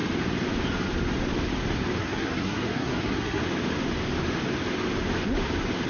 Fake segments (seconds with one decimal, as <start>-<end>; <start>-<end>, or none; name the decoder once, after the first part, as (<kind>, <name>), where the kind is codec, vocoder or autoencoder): 2.0-3.4 (codec, SNAC)